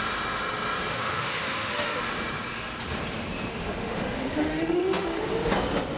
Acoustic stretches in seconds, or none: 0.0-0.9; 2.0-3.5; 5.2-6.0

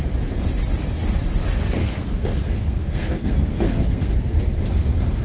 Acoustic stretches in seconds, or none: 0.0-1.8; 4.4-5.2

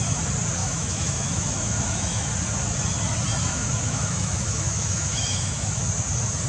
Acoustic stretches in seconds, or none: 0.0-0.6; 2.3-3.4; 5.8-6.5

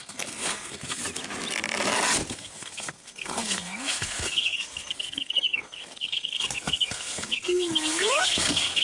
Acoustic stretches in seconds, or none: 1.0-2.3